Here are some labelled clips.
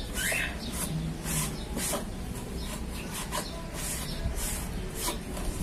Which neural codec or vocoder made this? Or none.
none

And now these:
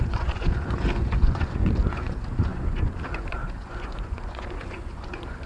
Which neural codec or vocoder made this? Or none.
vocoder, Vocos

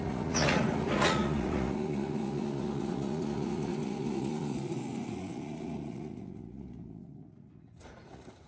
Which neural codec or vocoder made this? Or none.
vocoder, Vocos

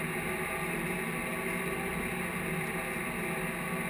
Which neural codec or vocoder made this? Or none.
none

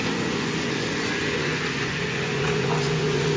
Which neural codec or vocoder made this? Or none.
vocoder, Vocos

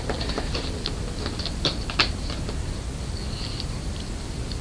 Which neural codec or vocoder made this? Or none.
none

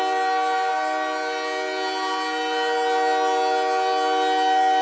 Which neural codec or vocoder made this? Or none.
none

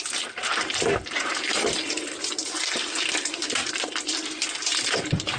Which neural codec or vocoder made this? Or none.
none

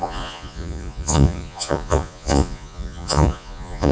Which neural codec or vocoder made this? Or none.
vocoder, Vocos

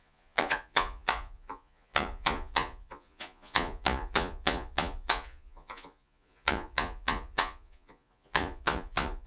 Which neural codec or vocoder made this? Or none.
vocoder, Vocos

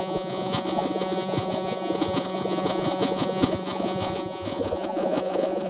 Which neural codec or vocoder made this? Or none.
vocoder, Vocos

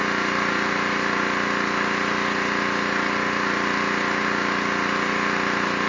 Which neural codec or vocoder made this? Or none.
none